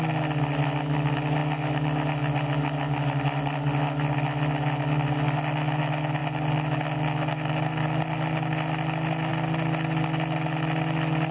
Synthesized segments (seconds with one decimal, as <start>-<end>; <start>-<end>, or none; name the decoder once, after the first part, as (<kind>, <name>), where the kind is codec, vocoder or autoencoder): none